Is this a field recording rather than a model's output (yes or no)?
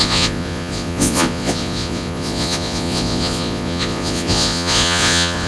no